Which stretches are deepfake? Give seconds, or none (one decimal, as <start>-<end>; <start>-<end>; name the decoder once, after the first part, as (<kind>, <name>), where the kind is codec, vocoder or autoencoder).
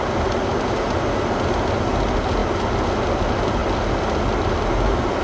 none